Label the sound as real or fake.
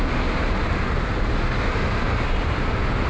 real